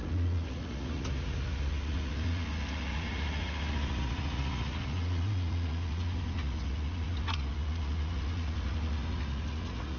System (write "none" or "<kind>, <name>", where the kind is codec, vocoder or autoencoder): vocoder, Vocos